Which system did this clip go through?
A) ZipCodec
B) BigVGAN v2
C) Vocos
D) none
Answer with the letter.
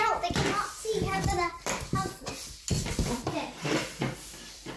B